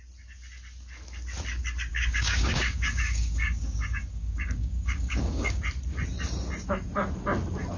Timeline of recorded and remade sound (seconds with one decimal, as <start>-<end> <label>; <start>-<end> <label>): 0.0-1.9 recorded; 1.9-5.6 remade; 5.6-7.8 recorded